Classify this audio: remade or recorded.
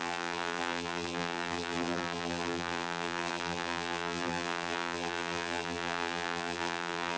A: remade